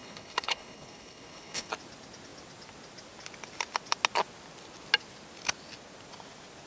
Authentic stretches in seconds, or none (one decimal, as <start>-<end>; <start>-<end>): 1.7-6.7